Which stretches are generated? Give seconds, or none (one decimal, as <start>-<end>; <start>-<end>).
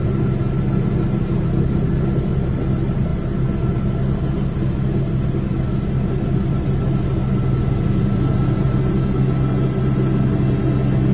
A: none